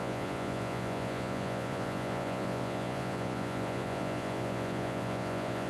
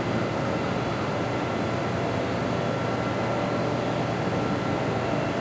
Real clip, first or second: second